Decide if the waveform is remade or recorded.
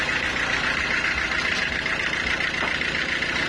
recorded